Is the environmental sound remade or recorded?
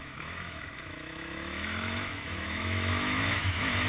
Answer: remade